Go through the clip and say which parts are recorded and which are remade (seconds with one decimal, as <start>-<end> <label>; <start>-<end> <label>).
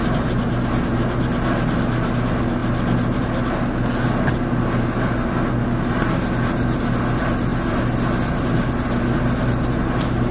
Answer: 0.0-10.3 recorded